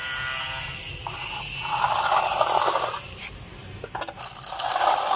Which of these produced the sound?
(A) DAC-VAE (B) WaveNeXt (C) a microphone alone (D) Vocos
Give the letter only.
C